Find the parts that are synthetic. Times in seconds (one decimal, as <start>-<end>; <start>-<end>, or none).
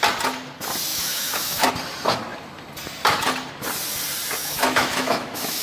0.9-1.7; 4.4-5.6